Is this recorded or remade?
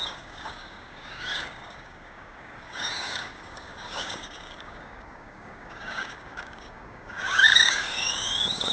remade